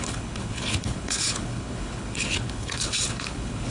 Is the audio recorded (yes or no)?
no